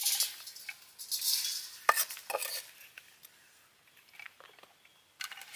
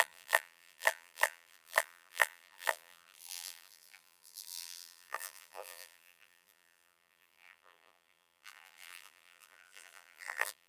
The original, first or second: first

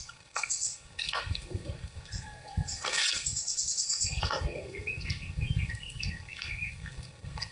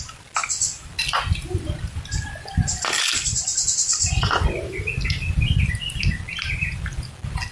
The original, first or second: second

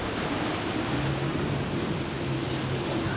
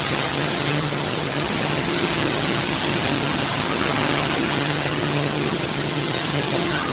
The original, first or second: first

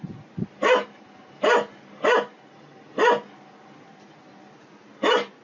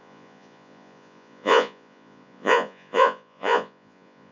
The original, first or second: first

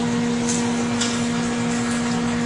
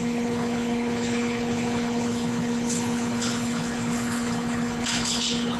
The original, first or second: first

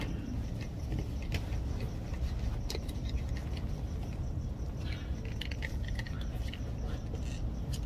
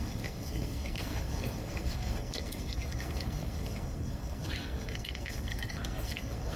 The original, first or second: first